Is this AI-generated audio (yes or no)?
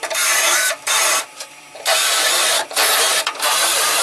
yes